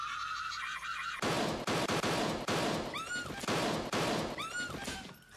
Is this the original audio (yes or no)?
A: yes